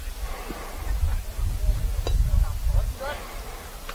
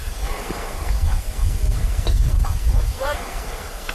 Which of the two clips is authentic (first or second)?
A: first